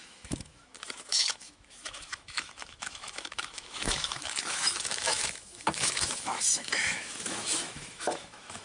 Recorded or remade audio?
remade